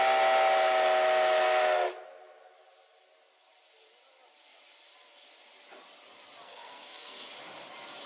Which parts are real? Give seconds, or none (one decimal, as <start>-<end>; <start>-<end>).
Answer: 0.0-6.4; 7.3-8.1